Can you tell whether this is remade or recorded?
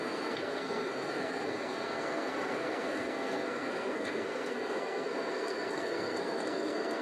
remade